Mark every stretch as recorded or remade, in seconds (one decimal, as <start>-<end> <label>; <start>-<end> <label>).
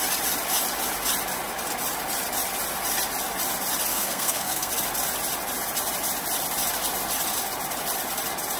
0.0-3.9 recorded; 3.9-4.7 remade; 4.7-8.6 recorded